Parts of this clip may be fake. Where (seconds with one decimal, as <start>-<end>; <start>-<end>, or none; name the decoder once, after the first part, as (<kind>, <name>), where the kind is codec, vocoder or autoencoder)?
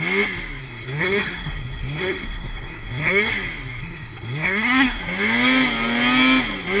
0.6-3.3 (codec, SNAC); 3.8-5.0